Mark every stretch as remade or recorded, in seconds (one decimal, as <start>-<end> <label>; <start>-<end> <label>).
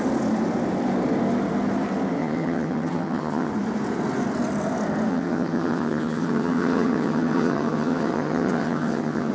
0.0-2.2 recorded; 2.2-3.5 remade; 3.5-5.1 recorded; 5.1-9.3 remade